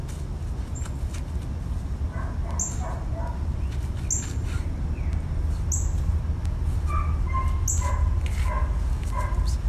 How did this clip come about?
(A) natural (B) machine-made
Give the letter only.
A